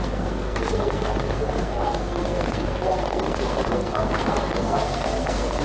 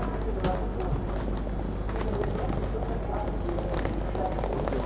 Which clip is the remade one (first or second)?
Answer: first